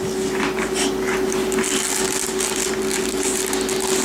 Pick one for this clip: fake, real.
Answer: real